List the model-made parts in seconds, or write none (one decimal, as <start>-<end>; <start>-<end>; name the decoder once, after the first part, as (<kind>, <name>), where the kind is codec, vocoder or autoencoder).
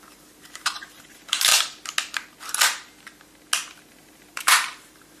0.0-1.5 (vocoder, BigVGAN v2); 3.9-5.2